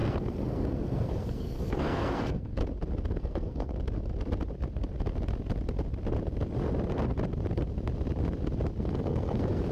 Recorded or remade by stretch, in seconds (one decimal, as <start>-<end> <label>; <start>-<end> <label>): 0.0-2.6 remade; 2.6-3.1 recorded; 3.1-3.7 remade; 3.7-8.8 recorded; 8.8-9.7 remade